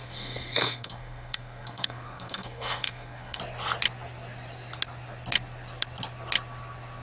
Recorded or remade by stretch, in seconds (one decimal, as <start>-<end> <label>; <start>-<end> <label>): 0.0-3.4 remade; 3.4-7.0 recorded